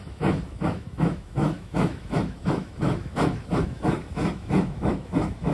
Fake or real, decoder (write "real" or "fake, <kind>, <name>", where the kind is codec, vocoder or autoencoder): fake, autoencoder, DAC-VAE